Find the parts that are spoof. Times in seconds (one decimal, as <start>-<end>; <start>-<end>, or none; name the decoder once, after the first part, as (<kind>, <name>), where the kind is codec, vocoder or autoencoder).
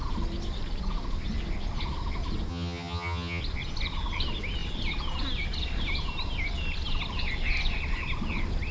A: 2.5-3.4 (vocoder, HiFi-GAN)